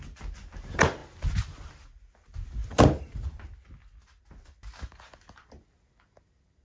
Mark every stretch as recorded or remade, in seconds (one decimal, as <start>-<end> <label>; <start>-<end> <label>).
0.0-6.6 recorded